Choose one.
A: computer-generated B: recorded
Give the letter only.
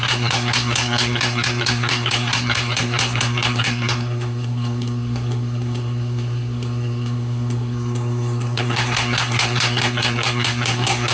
A